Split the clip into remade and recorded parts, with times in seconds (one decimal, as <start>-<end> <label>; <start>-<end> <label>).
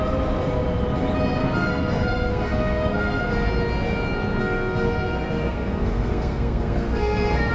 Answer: 0.0-1.4 recorded; 1.4-3.2 remade; 3.2-4.4 recorded; 4.4-7.5 remade